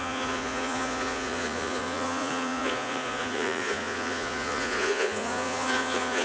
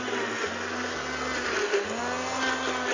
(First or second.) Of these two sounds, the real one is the second